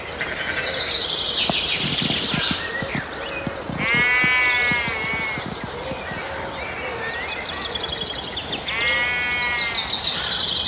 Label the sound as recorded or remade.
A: recorded